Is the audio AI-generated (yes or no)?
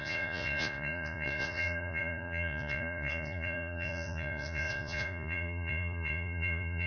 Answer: yes